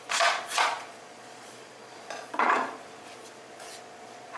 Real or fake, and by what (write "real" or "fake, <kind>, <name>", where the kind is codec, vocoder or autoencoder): fake, vocoder, Vocos